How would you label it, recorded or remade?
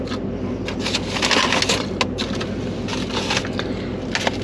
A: recorded